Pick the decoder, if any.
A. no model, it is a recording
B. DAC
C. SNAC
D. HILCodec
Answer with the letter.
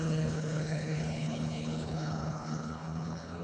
D